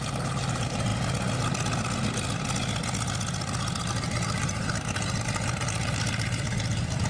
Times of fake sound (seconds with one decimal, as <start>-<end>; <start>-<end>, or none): 0.0-0.9; 3.9-7.1